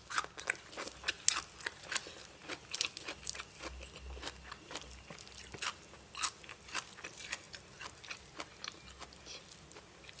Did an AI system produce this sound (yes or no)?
no